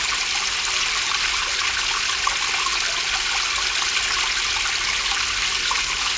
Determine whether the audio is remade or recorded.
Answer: recorded